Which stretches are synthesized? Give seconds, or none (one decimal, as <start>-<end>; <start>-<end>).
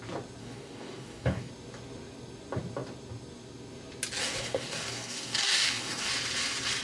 0.4-1.5; 4.2-6.1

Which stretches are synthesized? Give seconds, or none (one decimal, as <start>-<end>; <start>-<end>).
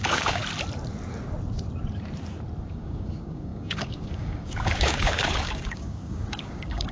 0.0-0.4; 2.7-6.9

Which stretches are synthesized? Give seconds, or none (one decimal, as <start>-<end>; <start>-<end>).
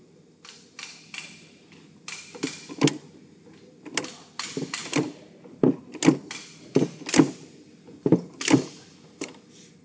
none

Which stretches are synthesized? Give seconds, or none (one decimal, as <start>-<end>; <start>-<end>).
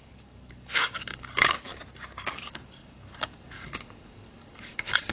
0.0-1.7; 2.3-5.1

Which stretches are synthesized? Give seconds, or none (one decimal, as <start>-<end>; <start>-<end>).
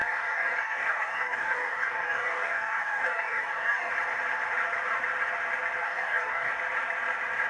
0.0-3.9; 5.8-6.5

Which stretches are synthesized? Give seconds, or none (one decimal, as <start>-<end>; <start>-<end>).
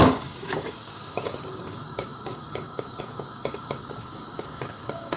0.0-5.2